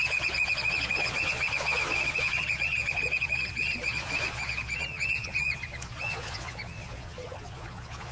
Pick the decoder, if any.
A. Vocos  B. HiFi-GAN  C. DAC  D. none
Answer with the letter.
A